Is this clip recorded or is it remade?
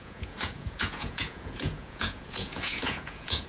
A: remade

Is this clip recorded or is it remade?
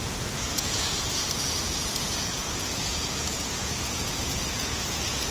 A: remade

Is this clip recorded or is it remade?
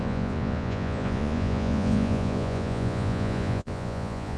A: remade